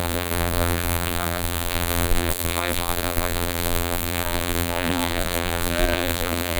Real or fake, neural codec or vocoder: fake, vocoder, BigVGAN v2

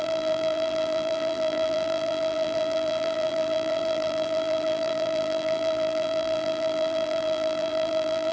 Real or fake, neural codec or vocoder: fake, vocoder, BigVGAN v2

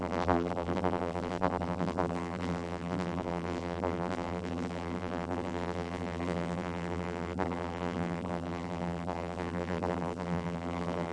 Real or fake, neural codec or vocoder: fake, vocoder, BigVGAN v2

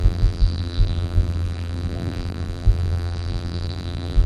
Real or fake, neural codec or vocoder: fake, vocoder, BigVGAN v2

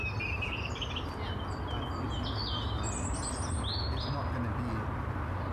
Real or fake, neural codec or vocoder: real